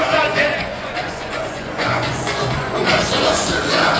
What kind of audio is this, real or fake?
fake